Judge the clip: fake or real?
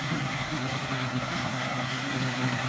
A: fake